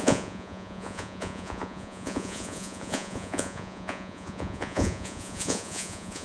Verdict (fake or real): fake